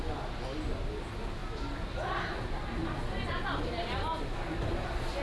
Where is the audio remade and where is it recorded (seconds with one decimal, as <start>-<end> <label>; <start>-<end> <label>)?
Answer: 0.0-5.2 recorded